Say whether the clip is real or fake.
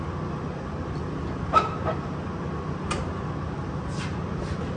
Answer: real